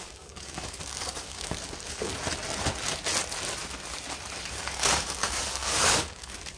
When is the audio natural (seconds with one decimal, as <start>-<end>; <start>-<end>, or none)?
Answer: 2.1-4.5